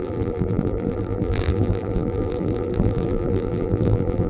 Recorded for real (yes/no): no